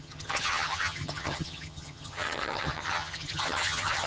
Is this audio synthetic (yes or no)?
yes